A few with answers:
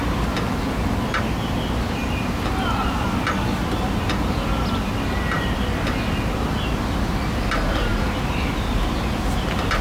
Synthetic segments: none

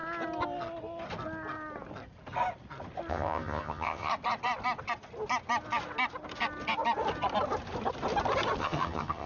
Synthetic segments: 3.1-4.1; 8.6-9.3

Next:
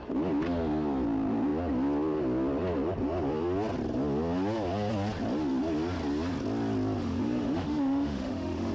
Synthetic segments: 7.0-8.7

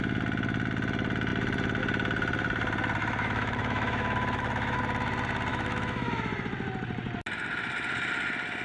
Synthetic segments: 3.0-4.8; 5.5-6.1

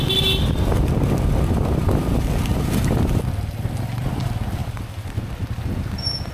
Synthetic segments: none